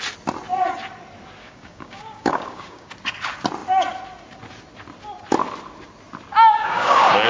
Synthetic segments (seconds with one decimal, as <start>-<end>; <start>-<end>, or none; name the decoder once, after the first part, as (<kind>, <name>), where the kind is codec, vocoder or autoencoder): 1.4-2.9 (codec, DAC); 6.3-7.3